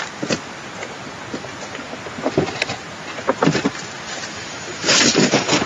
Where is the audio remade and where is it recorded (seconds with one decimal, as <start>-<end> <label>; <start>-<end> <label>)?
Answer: 0.0-4.3 recorded; 4.3-5.7 remade